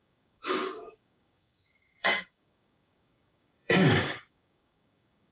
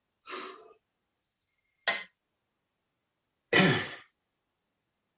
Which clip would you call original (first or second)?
second